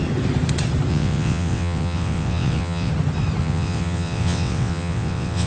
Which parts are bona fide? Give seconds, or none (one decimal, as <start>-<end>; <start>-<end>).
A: 0.0-0.9; 2.9-3.4